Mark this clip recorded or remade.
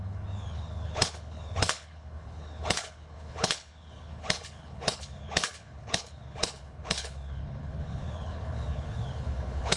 remade